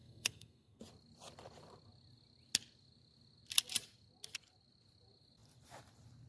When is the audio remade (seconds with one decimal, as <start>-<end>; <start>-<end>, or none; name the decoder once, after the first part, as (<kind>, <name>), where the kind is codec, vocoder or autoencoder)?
0.0-0.8 (codec, SNAC)